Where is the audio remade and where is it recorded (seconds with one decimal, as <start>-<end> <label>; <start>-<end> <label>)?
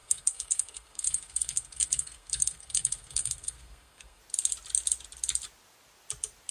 0.0-4.2 remade; 4.2-6.5 recorded